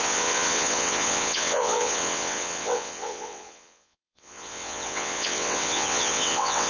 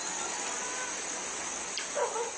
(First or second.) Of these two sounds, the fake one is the first